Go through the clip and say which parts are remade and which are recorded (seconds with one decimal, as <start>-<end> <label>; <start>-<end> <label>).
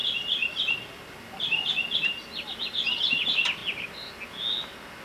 0.0-5.0 recorded